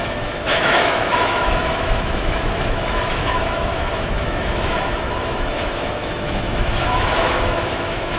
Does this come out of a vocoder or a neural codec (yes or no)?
yes